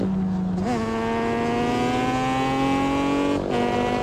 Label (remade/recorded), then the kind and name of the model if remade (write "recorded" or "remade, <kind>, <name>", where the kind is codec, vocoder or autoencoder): recorded